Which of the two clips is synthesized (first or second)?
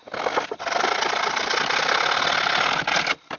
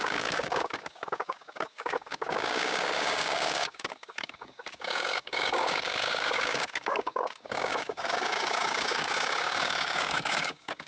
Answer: second